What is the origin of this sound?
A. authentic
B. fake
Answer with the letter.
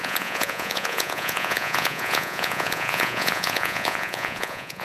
B